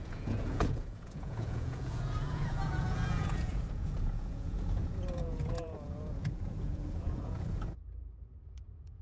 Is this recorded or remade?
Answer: remade